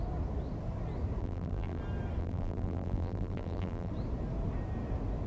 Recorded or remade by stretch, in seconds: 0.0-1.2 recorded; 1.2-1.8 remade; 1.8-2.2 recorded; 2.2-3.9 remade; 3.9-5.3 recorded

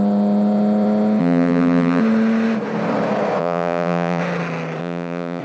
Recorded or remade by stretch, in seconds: 0.0-1.2 recorded; 1.2-2.0 remade; 2.0-3.4 recorded; 3.4-4.2 remade; 4.2-4.8 recorded; 4.8-5.4 remade

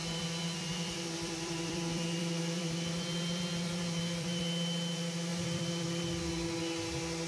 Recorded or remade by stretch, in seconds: 0.0-4.4 remade; 4.4-5.3 recorded; 5.3-6.0 remade; 6.0-7.3 recorded

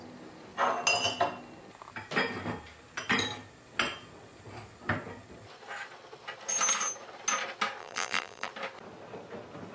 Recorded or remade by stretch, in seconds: 0.0-7.8 recorded; 7.8-8.5 remade; 8.5-9.7 recorded

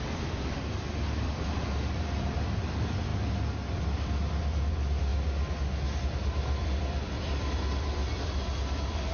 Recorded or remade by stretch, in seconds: 0.0-3.1 remade; 3.1-3.7 recorded; 3.7-5.1 remade; 5.1-6.0 recorded; 6.0-9.1 remade